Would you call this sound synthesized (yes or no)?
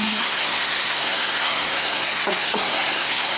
yes